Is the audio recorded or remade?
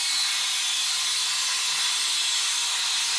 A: recorded